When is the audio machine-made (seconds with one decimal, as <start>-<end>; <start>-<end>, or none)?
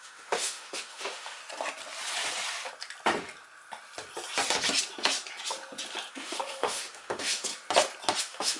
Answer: 0.0-1.4; 6.1-7.5; 8.2-8.6